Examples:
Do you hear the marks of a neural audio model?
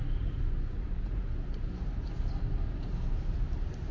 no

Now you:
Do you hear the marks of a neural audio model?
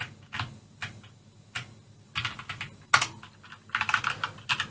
no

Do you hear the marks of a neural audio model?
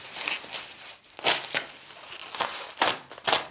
yes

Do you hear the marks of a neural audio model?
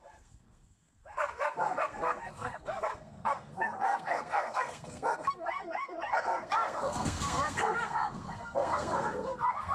yes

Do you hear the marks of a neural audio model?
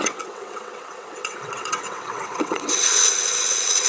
yes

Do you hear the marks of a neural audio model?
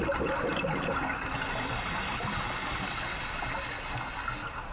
no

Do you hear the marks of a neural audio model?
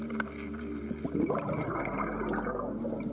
no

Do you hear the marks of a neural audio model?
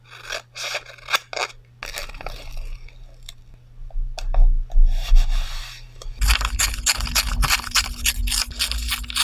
no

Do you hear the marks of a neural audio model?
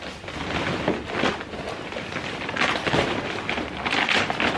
no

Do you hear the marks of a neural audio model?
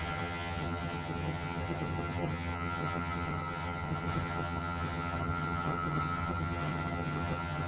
yes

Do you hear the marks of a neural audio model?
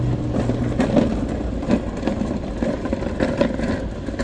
no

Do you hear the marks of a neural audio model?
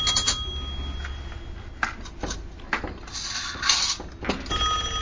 no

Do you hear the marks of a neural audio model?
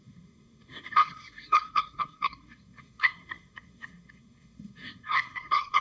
yes